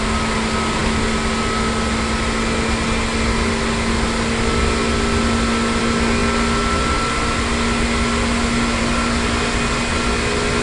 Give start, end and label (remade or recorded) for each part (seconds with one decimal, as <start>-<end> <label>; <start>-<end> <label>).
0.0-10.6 recorded